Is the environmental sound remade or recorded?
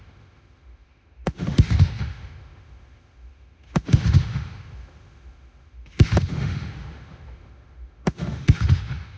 remade